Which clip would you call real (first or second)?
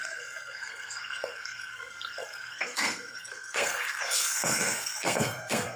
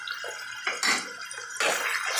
second